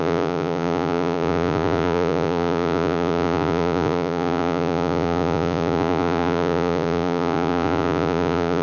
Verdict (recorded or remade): remade